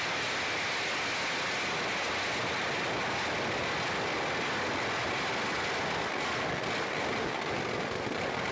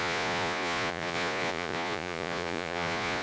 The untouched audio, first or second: first